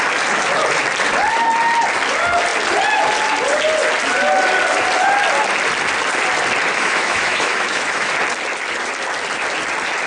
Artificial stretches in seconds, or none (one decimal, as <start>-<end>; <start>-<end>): 6.7-8.1